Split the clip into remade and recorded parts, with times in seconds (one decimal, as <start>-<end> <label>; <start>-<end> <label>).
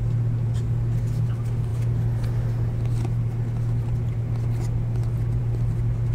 0.0-6.1 recorded